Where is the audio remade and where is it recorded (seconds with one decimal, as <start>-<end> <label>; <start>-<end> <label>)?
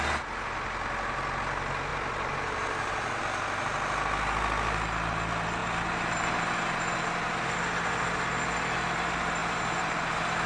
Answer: 0.0-1.9 recorded; 1.9-3.2 remade; 3.2-9.4 recorded; 9.4-10.1 remade; 10.1-10.5 recorded